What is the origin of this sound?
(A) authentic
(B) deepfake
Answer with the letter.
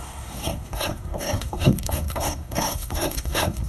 B